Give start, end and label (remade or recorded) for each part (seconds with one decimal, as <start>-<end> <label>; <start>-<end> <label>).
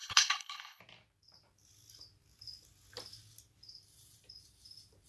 0.0-0.8 remade; 0.8-5.1 recorded